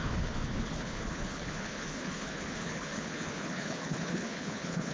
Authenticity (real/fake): fake